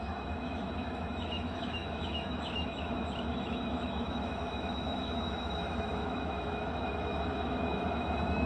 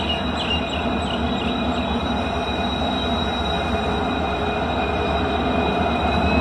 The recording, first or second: second